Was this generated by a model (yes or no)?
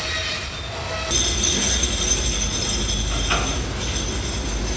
no